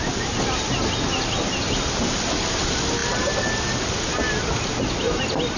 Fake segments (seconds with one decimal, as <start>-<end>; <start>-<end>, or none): none

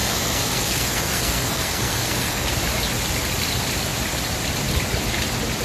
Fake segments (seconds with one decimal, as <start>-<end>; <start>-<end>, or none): 0.0-2.5

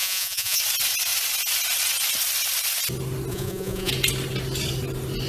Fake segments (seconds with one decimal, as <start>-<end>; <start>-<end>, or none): 0.0-0.6; 3.3-3.9

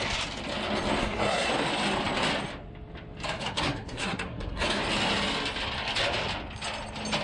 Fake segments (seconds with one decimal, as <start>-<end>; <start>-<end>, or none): 1.0-1.5; 3.4-4.8